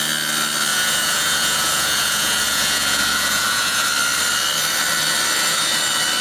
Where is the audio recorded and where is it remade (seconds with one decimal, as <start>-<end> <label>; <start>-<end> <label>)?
0.0-0.7 recorded; 0.7-3.9 remade; 3.9-6.2 recorded